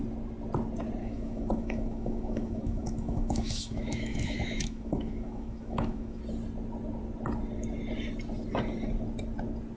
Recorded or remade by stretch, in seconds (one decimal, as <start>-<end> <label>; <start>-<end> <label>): 0.0-1.0 recorded; 1.0-6.2 remade; 6.2-9.8 recorded